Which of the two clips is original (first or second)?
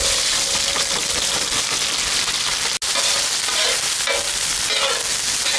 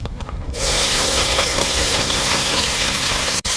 first